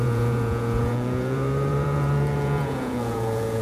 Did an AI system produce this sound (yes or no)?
yes